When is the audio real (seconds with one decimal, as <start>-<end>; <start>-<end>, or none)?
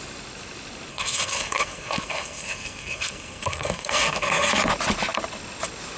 0.0-0.9; 4.5-6.0